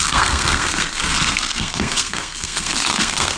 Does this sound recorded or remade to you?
remade